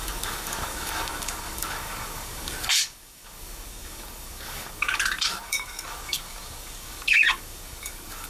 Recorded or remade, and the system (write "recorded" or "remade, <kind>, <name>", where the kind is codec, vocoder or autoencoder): remade, codec, DAC